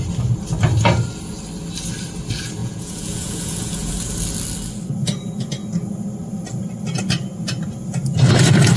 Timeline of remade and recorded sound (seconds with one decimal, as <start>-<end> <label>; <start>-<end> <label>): 0.0-2.6 recorded; 2.6-3.9 remade; 3.9-8.8 recorded